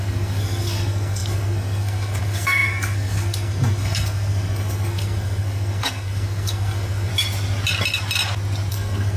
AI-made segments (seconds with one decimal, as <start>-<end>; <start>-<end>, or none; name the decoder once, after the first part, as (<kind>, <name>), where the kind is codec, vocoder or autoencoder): 0.0-7.1 (codec, SNAC); 8.7-9.2